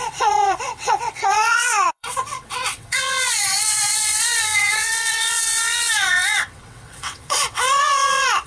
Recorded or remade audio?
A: remade